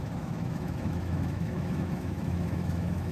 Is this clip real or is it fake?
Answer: fake